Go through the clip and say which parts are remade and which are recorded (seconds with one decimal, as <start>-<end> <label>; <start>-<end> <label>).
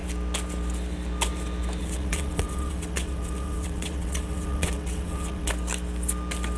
0.0-1.8 recorded; 1.8-5.5 remade; 5.5-6.6 recorded